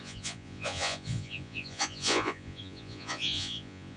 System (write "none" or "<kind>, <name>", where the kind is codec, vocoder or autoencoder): vocoder, Vocos